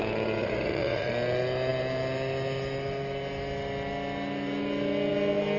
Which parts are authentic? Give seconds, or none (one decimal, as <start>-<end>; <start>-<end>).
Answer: 0.0-0.4; 1.1-5.6